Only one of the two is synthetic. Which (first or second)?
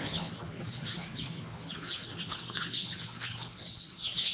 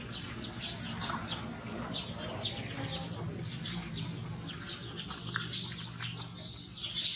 first